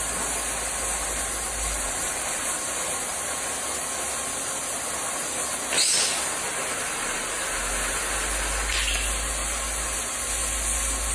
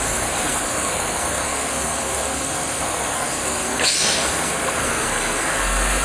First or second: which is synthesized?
second